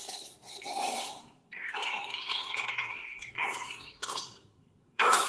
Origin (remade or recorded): remade